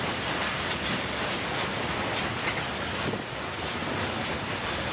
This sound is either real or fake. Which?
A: real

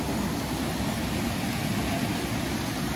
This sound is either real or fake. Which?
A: real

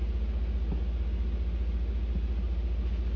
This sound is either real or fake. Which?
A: real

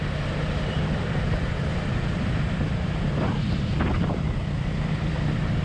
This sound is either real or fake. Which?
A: fake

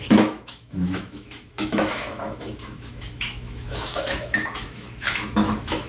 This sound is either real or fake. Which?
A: fake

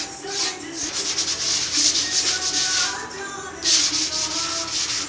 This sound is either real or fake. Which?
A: real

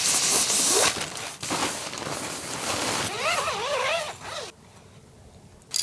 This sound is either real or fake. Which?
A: real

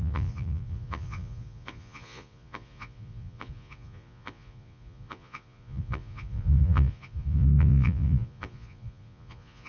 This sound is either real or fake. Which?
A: fake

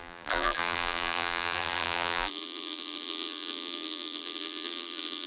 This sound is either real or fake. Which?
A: fake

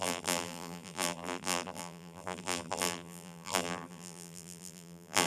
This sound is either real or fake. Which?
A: fake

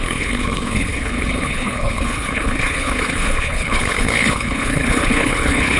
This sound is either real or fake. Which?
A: fake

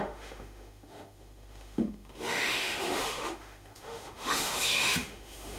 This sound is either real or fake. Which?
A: fake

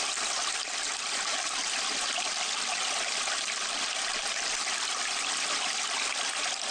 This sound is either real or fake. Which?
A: real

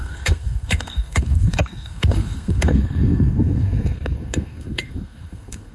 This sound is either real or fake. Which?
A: fake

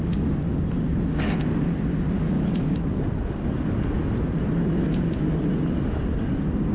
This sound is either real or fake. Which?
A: real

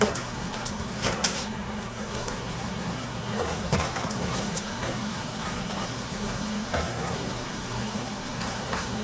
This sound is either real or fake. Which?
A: fake